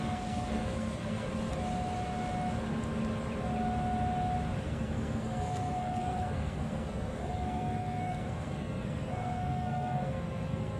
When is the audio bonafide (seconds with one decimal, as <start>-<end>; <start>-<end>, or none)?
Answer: 1.3-4.6